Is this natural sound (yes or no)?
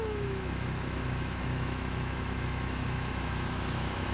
no